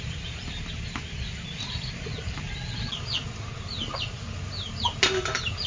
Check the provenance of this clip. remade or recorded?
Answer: recorded